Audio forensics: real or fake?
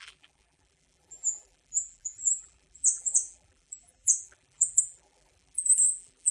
fake